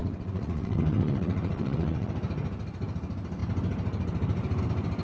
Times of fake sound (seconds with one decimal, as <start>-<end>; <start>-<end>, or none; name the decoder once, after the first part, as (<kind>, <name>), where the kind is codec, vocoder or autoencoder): 0.0-2.1 (vocoder, WaveNeXt)